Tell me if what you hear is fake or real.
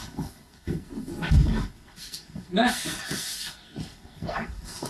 fake